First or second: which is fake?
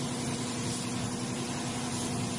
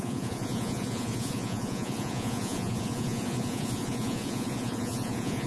second